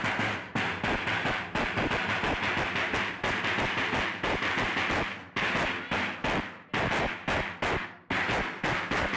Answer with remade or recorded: recorded